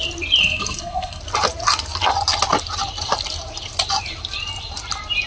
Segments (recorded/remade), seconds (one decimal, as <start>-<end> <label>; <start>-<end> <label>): 0.0-0.4 recorded; 0.4-1.2 remade; 1.2-5.3 recorded